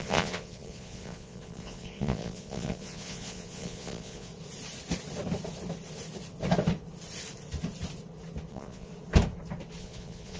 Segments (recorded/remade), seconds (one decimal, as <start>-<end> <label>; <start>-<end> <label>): 0.0-4.3 remade; 4.3-8.5 recorded; 8.5-8.9 remade; 8.9-9.8 recorded; 9.8-10.4 remade